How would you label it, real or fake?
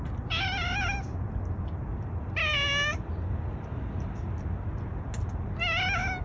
real